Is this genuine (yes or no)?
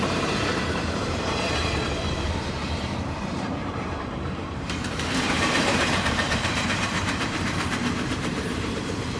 no